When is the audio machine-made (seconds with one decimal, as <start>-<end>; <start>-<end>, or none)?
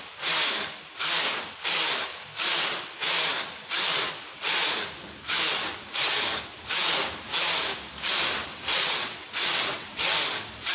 8.5-10.0